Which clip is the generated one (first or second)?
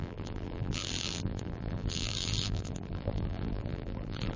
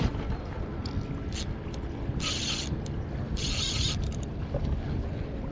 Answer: first